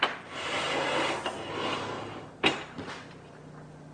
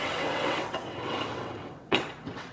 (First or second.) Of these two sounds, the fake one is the second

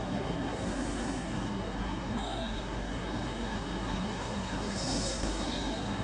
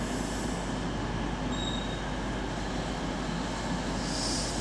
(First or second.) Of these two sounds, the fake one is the first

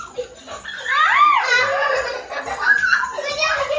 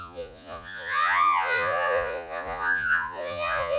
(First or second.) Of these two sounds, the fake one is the second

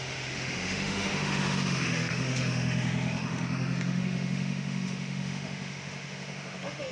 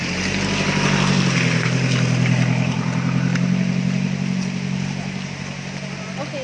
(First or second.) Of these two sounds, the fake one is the first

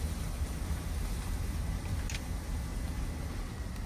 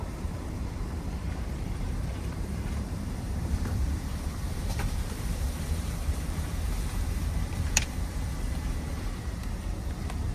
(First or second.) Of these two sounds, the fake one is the second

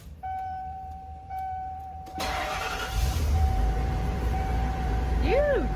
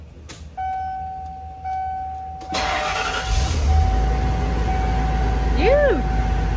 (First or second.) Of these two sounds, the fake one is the first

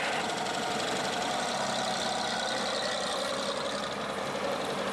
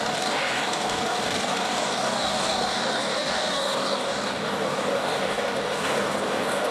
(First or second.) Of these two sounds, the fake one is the second